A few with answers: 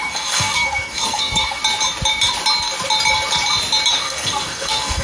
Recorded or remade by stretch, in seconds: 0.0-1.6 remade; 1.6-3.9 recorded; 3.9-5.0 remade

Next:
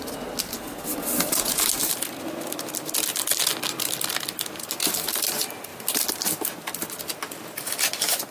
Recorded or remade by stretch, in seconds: 0.0-8.3 recorded

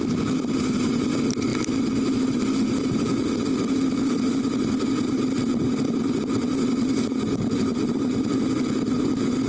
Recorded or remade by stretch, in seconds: 0.0-9.5 recorded

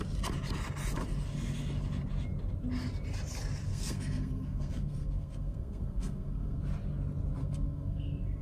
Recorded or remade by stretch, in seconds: 0.0-3.7 recorded; 3.7-6.6 remade; 6.6-7.4 recorded; 7.4-8.4 remade